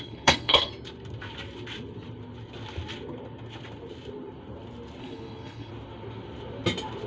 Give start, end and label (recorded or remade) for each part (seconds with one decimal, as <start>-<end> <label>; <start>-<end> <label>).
0.0-0.7 remade; 0.7-5.0 recorded; 5.0-5.7 remade; 5.7-7.1 recorded